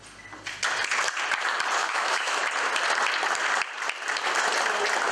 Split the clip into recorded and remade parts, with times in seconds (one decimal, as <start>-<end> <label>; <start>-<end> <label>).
0.0-1.8 recorded; 1.8-2.5 remade; 2.5-5.1 recorded